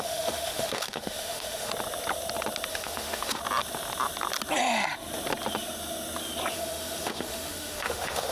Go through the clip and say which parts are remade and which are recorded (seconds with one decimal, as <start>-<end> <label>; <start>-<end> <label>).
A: 0.0-1.7 remade; 1.7-2.7 recorded; 2.7-3.4 remade; 3.4-6.5 recorded; 6.5-8.3 remade